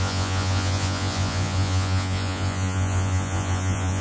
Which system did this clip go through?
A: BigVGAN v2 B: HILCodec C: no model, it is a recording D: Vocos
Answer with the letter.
D